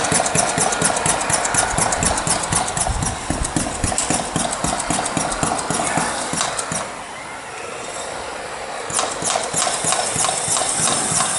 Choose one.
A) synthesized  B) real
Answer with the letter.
B